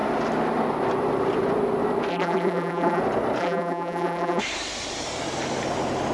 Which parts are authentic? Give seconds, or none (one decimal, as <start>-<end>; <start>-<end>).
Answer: 0.0-2.1; 3.0-3.4; 4.4-6.1